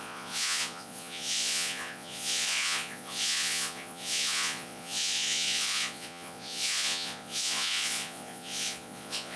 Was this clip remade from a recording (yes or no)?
yes